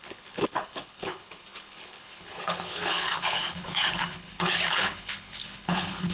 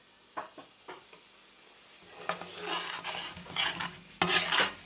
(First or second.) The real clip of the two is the second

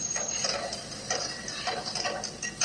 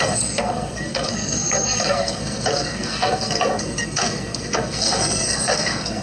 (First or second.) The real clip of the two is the first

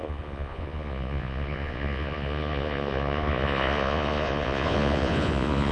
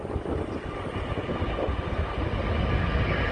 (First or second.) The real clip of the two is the second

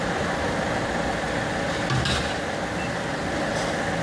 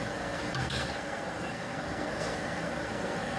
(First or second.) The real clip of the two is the first